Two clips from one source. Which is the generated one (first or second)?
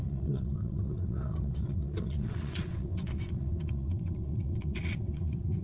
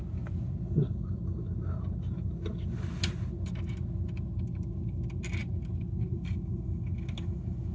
first